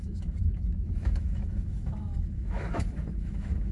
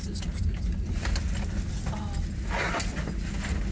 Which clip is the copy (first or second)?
first